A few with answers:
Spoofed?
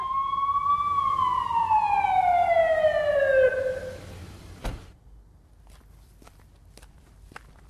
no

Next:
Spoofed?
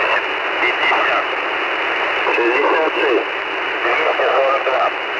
no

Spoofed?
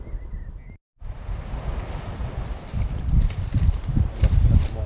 yes